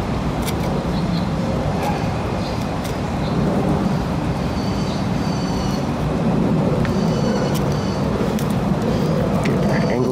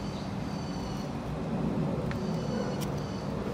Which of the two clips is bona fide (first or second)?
second